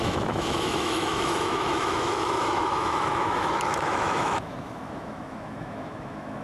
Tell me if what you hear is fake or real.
fake